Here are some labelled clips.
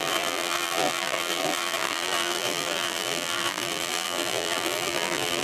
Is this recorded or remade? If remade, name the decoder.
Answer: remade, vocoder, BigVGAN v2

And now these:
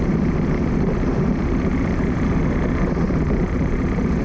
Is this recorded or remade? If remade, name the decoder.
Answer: recorded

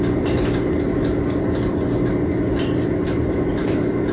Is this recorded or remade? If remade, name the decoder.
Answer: recorded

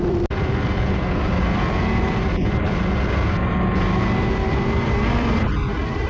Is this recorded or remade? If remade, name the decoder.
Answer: remade, vocoder, BigVGAN v2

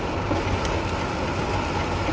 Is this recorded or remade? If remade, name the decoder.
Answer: recorded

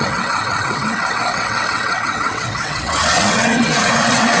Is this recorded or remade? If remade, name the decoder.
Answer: remade, vocoder, WaveNeXt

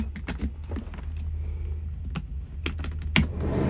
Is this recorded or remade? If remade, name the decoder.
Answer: recorded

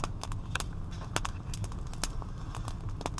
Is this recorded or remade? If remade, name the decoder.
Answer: recorded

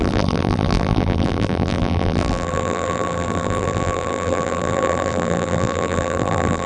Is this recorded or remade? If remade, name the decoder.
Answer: remade, vocoder, BigVGAN v2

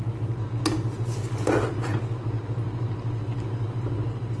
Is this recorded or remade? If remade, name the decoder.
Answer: recorded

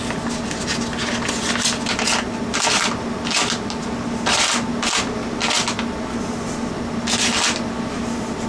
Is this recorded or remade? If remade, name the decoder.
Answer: recorded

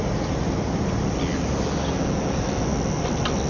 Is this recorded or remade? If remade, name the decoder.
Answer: recorded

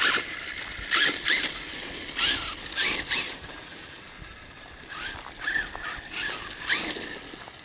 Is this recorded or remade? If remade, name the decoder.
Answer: recorded